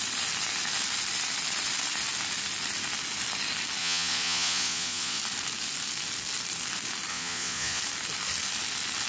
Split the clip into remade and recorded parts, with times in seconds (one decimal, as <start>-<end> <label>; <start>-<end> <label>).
0.0-3.8 recorded; 3.8-5.2 remade; 5.2-7.1 recorded; 7.1-7.8 remade; 7.8-9.1 recorded

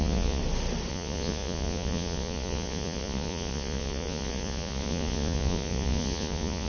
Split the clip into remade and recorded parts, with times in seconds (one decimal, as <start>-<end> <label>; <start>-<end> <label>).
0.0-0.4 remade; 0.4-0.9 recorded; 0.9-6.7 remade